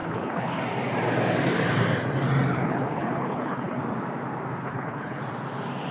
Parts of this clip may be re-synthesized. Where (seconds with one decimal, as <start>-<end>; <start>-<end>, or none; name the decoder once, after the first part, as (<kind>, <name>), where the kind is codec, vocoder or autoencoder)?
0.0-0.6 (codec, HILCodec); 2.5-3.8; 4.6-5.2